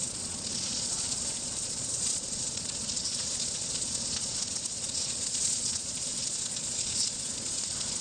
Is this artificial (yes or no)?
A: yes